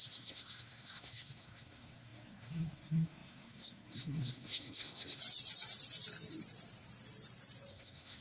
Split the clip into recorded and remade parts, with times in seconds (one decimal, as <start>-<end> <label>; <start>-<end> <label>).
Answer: 0.0-5.2 remade; 5.2-7.7 recorded; 7.7-8.2 remade